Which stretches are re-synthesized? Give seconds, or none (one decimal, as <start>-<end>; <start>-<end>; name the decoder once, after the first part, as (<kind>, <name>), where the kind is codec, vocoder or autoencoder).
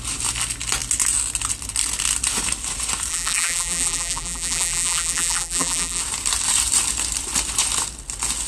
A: 3.1-6.0 (vocoder, BigVGAN v2)